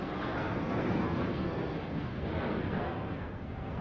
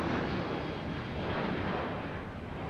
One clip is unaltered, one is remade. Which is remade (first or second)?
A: first